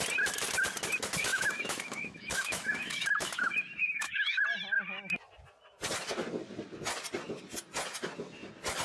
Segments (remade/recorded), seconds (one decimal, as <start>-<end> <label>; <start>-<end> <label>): 0.0-1.3 recorded; 1.3-4.4 remade; 4.4-8.8 recorded